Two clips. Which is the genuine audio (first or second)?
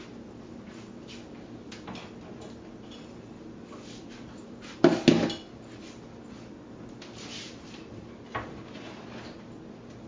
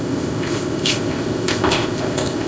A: first